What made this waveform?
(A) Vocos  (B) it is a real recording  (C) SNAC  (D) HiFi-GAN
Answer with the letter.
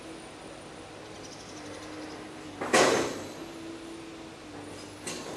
B